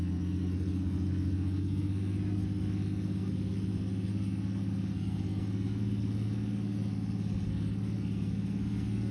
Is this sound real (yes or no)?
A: no